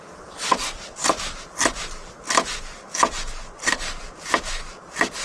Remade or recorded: recorded